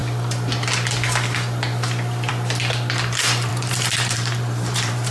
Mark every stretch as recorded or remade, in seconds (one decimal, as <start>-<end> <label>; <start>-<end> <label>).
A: 0.0-3.5 recorded; 3.5-5.1 remade